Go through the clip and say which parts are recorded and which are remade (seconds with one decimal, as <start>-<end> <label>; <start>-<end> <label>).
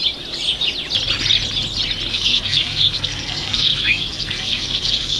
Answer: 0.0-2.1 recorded; 2.1-5.2 remade